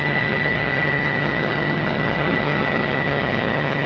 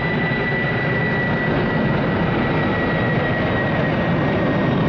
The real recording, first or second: second